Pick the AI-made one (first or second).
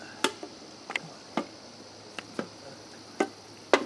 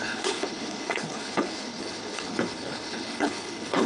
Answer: second